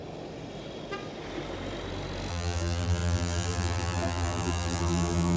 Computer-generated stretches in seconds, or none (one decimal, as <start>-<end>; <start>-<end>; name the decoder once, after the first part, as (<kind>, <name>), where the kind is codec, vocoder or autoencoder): 2.3-5.4 (vocoder, BigVGAN v2)